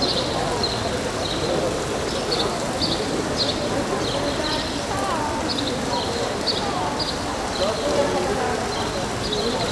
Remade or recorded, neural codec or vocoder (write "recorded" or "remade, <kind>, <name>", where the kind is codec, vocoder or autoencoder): recorded